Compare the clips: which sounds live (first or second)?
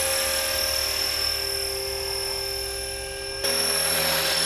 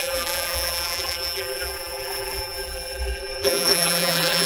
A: first